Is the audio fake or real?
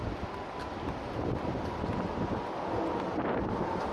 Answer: real